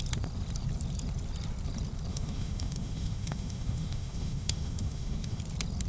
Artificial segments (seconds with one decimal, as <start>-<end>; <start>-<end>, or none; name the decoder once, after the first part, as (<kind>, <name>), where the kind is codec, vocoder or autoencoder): 2.1-5.4 (autoencoder, DAC-VAE)